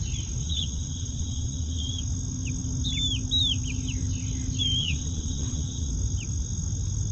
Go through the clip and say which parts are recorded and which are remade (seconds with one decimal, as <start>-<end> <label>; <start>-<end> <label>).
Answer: 0.0-0.4 recorded; 0.4-2.0 remade; 2.0-4.8 recorded; 4.8-5.9 remade; 5.9-7.1 recorded

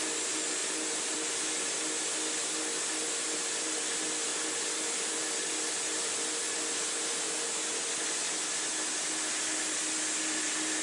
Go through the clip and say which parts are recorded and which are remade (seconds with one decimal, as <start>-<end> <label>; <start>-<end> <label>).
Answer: 0.0-10.8 recorded